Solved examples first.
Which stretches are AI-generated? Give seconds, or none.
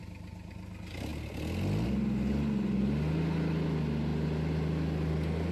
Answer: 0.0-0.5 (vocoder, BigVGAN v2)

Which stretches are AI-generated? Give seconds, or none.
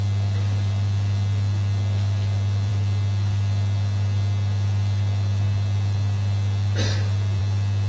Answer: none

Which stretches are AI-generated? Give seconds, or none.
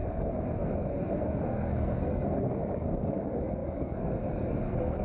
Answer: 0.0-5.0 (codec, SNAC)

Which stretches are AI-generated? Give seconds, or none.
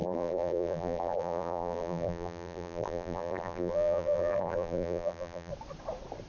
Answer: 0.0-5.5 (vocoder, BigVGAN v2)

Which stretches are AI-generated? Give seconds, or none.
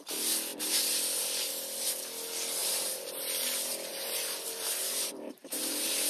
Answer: 0.5-1.5 (vocoder, BigVGAN v2); 2.6-3.2; 3.9-6.1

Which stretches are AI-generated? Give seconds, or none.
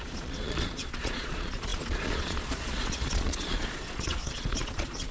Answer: 0.0-5.1 (vocoder, Vocos)